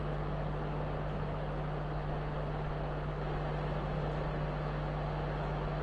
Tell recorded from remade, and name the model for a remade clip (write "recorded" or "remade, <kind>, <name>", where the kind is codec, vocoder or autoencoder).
recorded